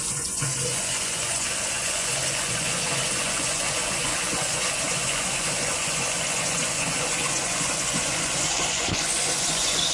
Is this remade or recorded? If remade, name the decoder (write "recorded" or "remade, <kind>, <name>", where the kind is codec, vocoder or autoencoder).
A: remade, vocoder, Vocos